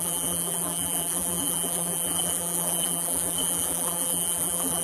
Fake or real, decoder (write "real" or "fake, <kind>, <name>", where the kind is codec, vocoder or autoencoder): fake, vocoder, BigVGAN v2